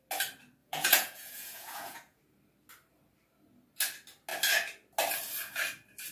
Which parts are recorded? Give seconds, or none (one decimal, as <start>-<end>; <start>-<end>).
0.0-0.6; 2.2-6.1